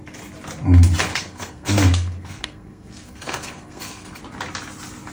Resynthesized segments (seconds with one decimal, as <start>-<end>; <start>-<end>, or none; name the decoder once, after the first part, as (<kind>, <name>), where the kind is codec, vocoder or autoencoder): 1.1-4.2 (codec, SNAC)